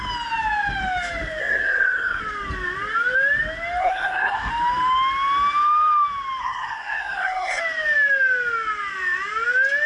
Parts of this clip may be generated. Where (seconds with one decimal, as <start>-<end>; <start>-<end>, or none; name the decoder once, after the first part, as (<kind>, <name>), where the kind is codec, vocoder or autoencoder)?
1.4-2.2 (codec, SNAC); 3.8-4.5; 6.4-7.6